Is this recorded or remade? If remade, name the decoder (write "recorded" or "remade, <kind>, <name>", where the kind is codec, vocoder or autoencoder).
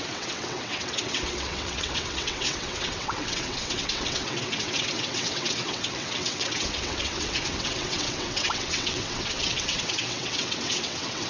remade, vocoder, WaveNeXt